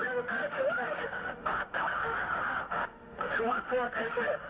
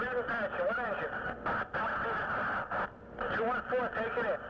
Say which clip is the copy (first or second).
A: first